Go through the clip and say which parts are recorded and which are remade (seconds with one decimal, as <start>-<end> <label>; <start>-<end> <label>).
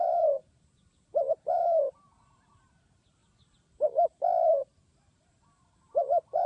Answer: 0.0-0.4 remade; 0.4-2.6 recorded; 2.6-3.2 remade; 3.2-4.9 recorded; 4.9-6.5 remade